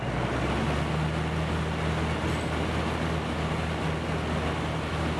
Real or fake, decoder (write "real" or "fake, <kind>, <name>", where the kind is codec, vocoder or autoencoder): real